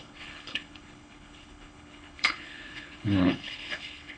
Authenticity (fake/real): fake